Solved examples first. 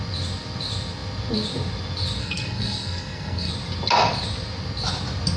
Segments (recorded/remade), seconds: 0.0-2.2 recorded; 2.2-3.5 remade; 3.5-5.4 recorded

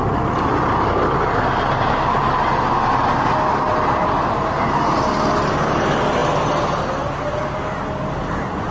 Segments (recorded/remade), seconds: 0.0-8.7 recorded

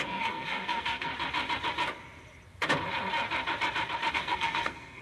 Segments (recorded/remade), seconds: 0.0-1.1 remade; 1.1-4.1 recorded; 4.1-5.0 remade